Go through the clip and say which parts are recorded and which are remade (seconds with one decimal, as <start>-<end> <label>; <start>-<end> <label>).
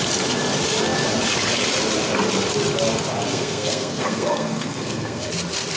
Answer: 0.0-3.3 recorded; 3.3-5.3 remade; 5.3-5.8 recorded